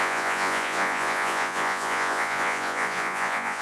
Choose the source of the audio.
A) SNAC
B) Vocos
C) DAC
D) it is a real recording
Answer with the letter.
B